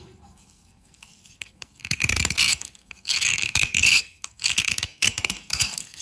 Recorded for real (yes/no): no